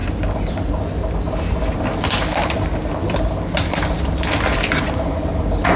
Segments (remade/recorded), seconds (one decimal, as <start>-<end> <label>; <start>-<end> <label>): 0.0-5.8 recorded

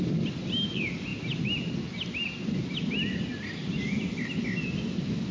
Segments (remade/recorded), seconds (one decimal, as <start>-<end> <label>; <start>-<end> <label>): 0.0-5.3 recorded

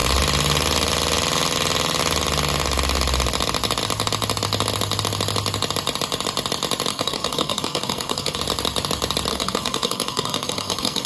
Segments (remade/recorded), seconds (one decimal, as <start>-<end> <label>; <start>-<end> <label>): 0.0-6.9 recorded; 6.9-8.4 remade; 8.4-9.3 recorded; 9.3-11.1 remade

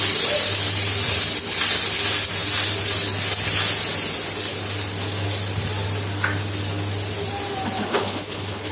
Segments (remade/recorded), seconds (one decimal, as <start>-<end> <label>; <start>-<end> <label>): 0.0-7.8 recorded; 7.8-8.7 remade

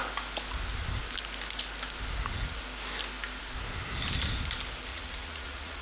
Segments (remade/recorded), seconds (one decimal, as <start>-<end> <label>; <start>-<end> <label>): 0.0-4.9 recorded; 4.9-5.8 remade

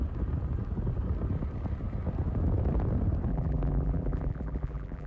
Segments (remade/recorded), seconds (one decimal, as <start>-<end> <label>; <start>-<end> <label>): 0.0-3.3 recorded; 3.3-5.1 remade